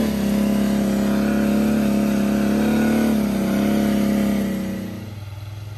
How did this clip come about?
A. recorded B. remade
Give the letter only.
A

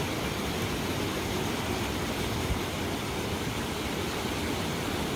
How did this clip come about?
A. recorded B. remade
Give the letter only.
A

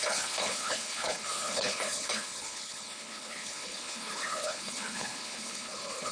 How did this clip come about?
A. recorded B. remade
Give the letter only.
B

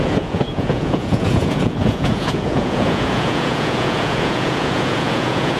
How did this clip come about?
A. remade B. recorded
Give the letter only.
A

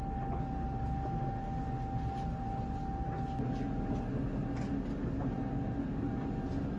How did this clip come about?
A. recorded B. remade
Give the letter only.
A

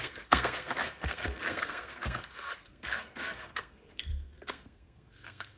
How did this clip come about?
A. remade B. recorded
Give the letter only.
A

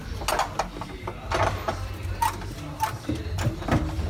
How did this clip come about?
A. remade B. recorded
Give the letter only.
B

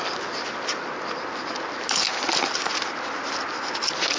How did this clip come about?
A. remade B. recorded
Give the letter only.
B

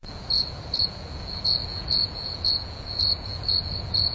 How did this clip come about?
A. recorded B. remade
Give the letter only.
B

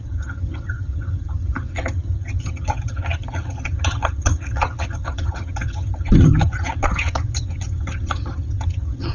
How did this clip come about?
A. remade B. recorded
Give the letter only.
A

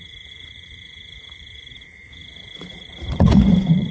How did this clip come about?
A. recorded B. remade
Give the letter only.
B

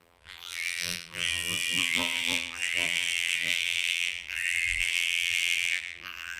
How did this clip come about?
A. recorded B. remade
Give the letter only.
B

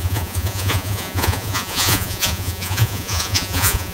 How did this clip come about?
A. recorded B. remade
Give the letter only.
B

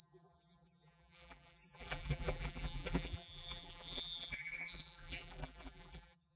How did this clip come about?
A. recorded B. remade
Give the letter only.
B